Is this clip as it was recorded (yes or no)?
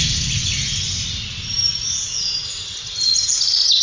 yes